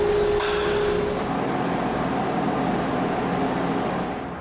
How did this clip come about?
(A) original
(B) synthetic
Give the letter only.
A